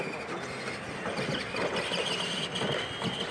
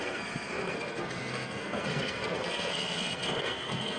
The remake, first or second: second